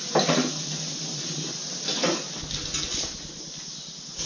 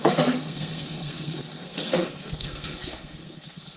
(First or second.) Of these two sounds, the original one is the first